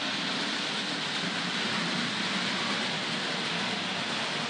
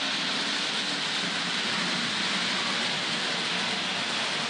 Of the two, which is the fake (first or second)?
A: first